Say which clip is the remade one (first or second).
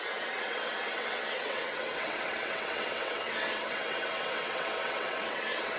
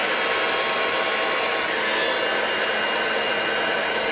first